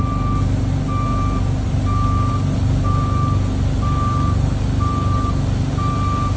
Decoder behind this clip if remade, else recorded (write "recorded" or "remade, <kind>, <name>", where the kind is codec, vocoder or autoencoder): recorded